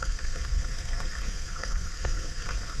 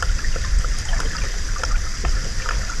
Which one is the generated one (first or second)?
first